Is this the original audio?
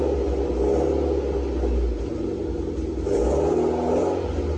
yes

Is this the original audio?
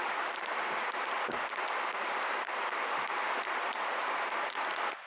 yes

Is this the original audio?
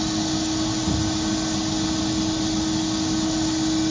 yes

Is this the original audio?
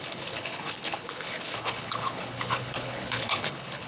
no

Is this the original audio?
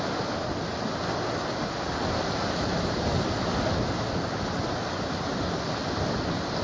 yes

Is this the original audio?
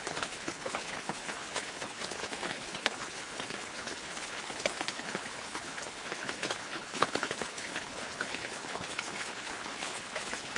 no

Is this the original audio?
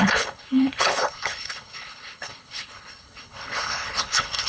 no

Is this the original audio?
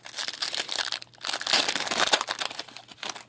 yes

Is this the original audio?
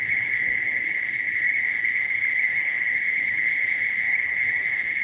no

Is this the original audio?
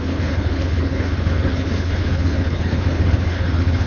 no